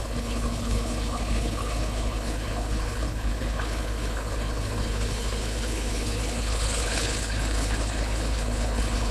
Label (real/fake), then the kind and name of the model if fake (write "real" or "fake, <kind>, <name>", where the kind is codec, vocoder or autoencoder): fake, codec, HILCodec